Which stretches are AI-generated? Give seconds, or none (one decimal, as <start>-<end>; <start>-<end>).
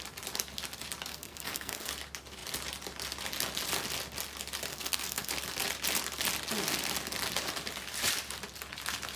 1.1-1.9; 4.7-5.3